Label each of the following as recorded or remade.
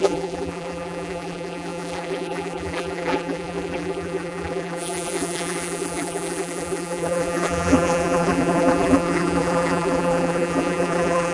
remade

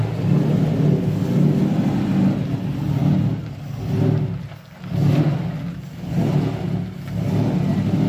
recorded